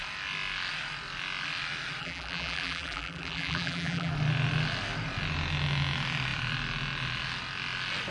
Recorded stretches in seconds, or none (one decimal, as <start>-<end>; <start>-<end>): 0.0-2.0; 4.1-8.1

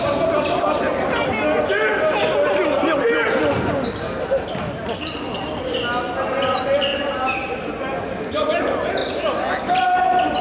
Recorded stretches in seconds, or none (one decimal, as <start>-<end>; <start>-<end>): 0.0-6.9; 7.6-10.4

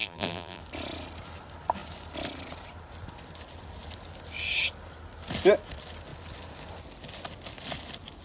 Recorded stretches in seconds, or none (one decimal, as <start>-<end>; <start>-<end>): 0.6-8.2

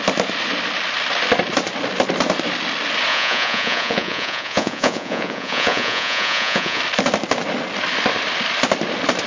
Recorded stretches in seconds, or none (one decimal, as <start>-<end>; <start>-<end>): 0.0-3.1; 6.8-9.3

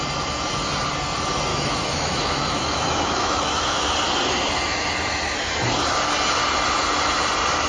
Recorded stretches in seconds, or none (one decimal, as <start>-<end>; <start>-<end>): 0.0-1.5; 3.9-7.7

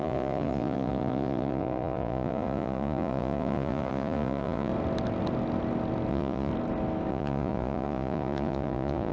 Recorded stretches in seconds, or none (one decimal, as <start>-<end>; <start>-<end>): 4.7-6.1; 6.5-7.1

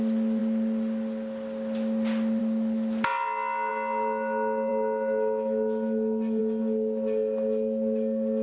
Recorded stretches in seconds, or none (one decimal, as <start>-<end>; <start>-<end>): 0.0-8.4

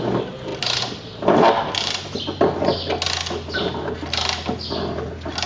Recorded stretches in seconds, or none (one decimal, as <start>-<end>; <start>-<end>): 0.0-5.5